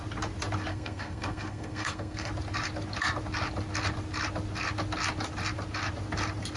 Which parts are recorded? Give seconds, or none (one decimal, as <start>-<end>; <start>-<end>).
0.0-0.7; 2.3-6.6